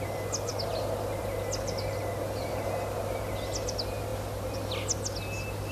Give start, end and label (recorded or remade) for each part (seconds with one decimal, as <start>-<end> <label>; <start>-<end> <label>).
0.0-5.7 recorded